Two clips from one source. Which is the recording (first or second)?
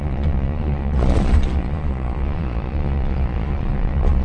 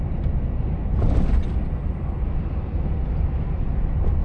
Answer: second